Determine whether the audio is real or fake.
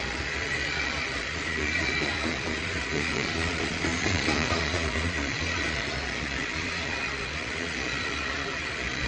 fake